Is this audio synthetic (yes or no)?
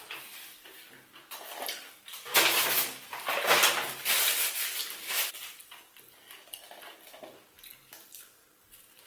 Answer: no